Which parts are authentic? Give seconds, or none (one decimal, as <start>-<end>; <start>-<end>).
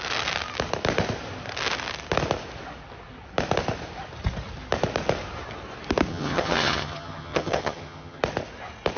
0.0-6.1; 8.2-9.0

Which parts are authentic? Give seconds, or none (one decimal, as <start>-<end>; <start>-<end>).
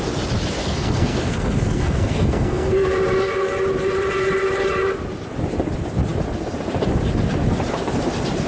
0.0-0.6; 2.9-8.5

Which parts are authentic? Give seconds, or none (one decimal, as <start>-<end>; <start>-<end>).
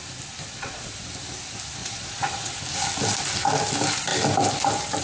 0.0-0.5; 1.1-1.8; 2.6-5.0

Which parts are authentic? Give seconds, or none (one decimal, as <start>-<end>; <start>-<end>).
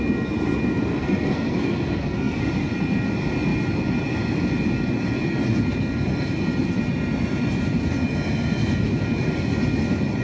0.0-0.9; 2.4-10.2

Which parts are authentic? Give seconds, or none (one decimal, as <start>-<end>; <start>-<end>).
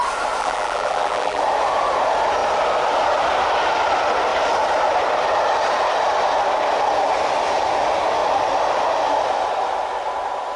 0.0-0.4; 1.4-10.6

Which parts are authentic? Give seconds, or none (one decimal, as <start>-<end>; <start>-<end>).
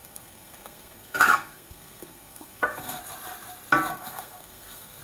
3.0-3.9